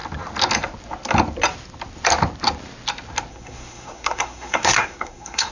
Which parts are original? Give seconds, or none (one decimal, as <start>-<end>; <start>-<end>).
0.0-3.3